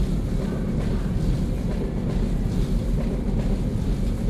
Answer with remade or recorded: recorded